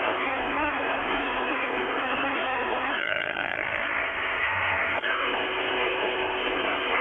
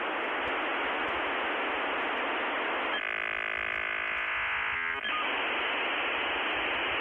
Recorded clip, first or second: second